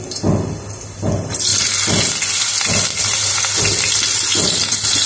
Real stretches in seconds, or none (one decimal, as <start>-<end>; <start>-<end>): 0.0-5.1